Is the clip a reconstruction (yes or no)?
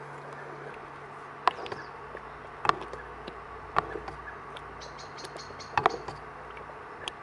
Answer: no